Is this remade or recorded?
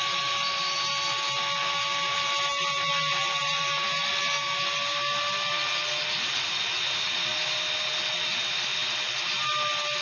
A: recorded